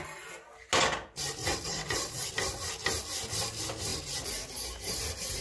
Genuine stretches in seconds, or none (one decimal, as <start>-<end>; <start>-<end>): 0.0-1.4; 2.3-5.4

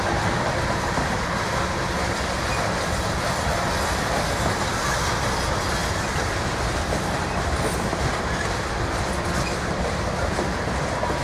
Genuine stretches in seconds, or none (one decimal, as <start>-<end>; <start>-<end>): 0.0-11.2